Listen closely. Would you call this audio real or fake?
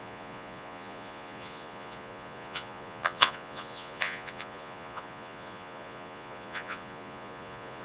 fake